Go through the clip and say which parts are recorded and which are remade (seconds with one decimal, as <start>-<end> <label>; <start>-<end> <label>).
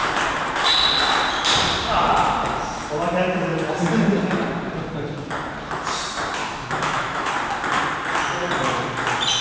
0.0-6.4 recorded; 6.4-7.3 remade; 7.3-9.4 recorded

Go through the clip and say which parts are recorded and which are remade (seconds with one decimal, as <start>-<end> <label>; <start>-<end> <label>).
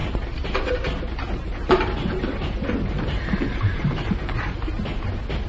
0.0-0.7 remade; 0.7-1.4 recorded; 1.4-4.7 remade; 4.7-5.5 recorded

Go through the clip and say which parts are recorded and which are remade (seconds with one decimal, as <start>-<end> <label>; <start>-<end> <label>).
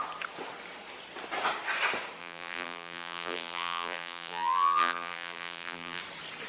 0.0-2.2 recorded; 2.2-6.0 remade; 6.0-6.5 recorded